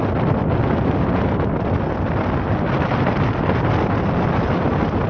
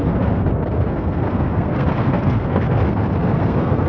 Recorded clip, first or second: first